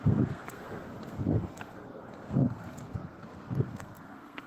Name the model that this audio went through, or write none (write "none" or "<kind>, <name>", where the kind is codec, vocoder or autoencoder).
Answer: codec, SNAC